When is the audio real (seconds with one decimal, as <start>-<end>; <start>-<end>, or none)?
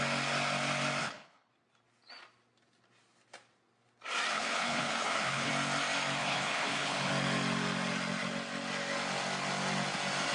0.0-1.0; 1.5-4.3; 5.5-6.2; 7.1-10.3